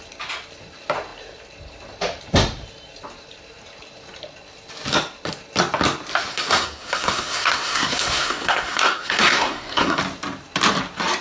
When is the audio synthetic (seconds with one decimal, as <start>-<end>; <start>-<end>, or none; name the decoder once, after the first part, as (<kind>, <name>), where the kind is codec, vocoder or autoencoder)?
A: 6.3-10.0 (codec, SNAC)